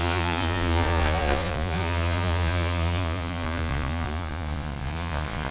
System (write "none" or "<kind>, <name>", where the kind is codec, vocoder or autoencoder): vocoder, Vocos